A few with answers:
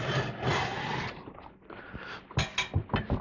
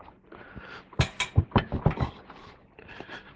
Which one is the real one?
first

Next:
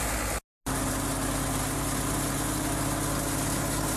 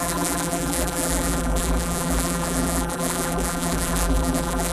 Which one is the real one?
first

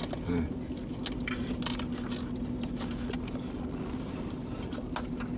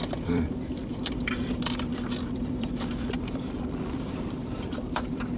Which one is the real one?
first